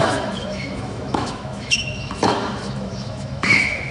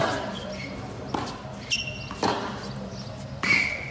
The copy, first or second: first